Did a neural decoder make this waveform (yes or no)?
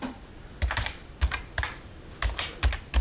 no